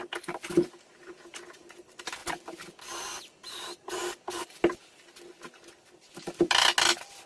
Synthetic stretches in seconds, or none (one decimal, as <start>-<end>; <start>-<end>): none